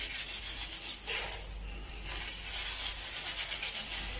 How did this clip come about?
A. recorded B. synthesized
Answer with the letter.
A